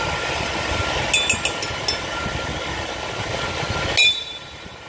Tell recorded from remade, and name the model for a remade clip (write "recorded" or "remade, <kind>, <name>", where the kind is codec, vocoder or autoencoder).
recorded